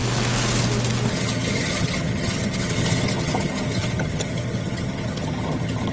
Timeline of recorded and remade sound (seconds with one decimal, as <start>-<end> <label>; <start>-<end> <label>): 0.0-1.1 recorded; 1.1-5.9 remade